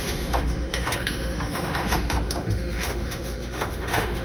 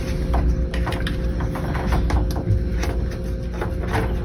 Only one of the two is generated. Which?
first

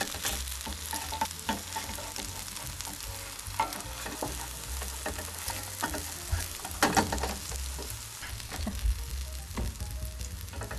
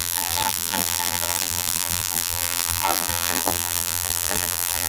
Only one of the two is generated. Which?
second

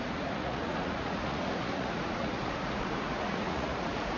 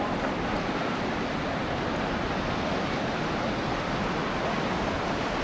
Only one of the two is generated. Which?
first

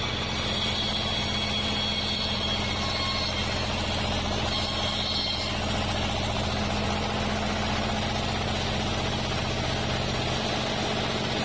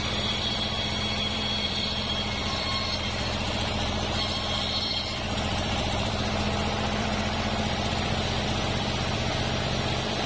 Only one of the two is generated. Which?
second